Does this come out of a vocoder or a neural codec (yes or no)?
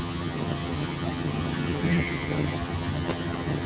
yes